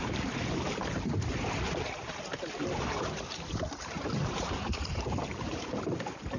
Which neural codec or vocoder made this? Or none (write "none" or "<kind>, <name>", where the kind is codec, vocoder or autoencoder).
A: vocoder, BigVGAN v2